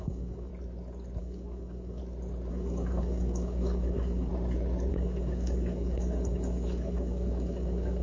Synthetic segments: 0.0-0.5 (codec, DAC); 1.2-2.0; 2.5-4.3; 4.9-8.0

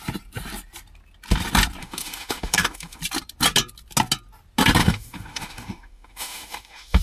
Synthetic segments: 1.8-3.0 (autoencoder, DAC-VAE); 4.8-7.0

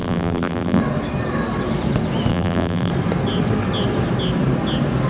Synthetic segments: 0.0-0.8 (vocoder, BigVGAN v2); 2.3-2.9

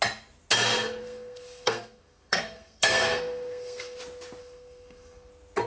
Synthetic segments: 1.0-4.0 (codec, SNAC); 4.4-5.3